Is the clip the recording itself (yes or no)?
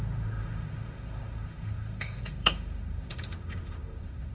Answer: no